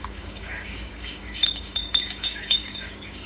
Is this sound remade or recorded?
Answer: remade